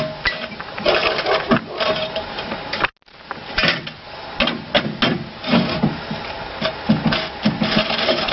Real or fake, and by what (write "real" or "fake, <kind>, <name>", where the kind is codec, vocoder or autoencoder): real